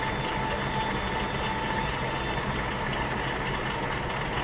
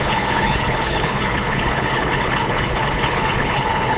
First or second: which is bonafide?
first